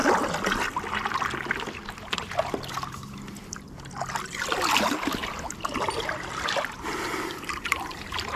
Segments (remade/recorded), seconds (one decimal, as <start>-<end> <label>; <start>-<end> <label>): 0.0-8.4 recorded

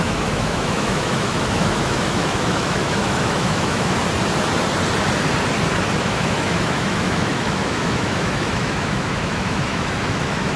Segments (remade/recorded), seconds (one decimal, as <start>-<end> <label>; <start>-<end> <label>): 0.0-4.0 remade; 4.0-6.0 recorded; 6.0-10.6 remade

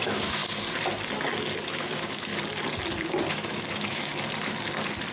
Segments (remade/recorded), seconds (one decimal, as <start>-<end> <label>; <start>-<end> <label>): 0.0-0.4 remade; 0.4-1.6 recorded; 1.6-2.3 remade; 2.3-3.3 recorded; 3.3-4.1 remade; 4.1-5.1 recorded

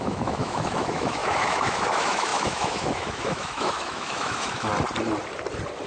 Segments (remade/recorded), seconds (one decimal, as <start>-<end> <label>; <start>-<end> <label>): 0.0-4.7 remade; 4.7-5.9 recorded